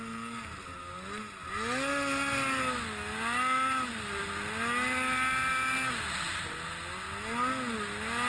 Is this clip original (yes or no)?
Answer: yes